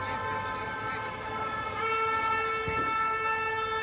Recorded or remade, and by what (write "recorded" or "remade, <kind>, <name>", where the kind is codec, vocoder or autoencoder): recorded